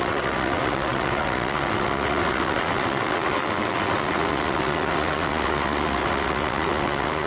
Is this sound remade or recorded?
remade